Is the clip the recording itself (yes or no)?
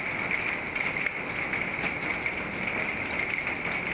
yes